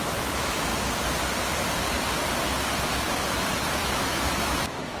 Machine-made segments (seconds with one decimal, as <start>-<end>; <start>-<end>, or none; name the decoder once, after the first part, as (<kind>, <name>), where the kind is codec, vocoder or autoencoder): 0.0-0.7 (autoencoder, DAC-VAE); 3.7-5.0